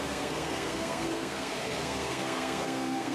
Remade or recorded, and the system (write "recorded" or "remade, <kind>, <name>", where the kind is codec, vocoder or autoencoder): remade, codec, SNAC